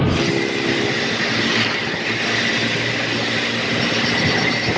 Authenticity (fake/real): real